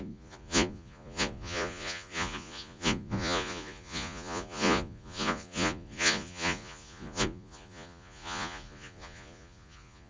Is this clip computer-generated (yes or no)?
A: yes